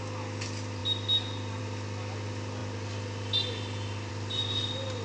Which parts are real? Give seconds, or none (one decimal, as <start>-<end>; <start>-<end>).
0.0-5.0